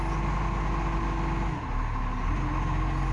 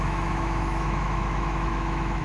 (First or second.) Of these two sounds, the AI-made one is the second